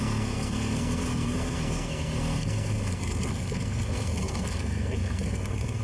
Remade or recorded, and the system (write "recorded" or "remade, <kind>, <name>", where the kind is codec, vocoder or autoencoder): remade, codec, SNAC